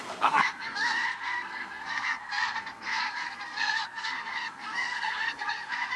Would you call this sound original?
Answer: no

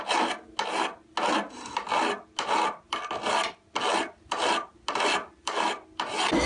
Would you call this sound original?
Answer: yes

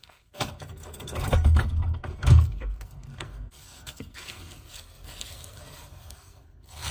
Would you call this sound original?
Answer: no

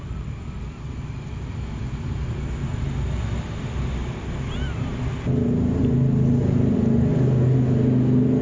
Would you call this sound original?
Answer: yes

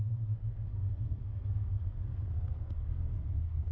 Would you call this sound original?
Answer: no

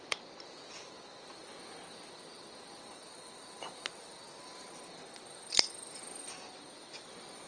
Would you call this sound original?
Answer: yes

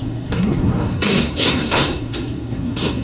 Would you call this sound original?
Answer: no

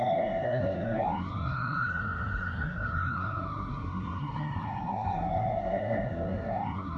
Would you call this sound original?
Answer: no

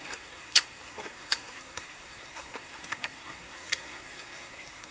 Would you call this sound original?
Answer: no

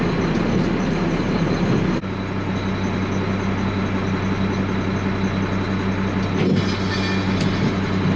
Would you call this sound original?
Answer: yes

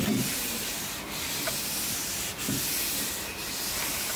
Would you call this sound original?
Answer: yes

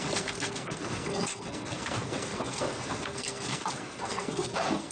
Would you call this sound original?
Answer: no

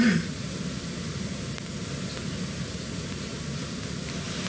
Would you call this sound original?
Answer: yes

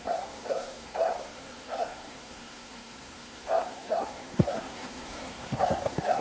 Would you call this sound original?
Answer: no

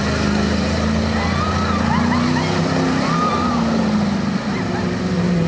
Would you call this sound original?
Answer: yes